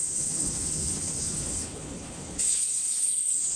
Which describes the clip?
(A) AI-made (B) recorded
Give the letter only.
A